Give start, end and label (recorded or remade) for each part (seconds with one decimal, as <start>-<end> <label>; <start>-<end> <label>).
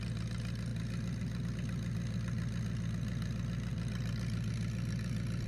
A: 0.0-3.7 recorded; 3.7-4.5 remade; 4.5-5.5 recorded